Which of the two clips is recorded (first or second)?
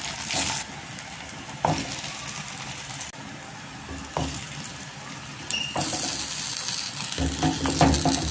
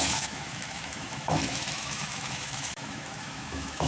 first